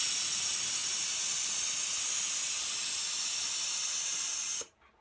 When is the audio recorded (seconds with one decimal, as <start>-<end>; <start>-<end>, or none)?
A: 0.0-5.0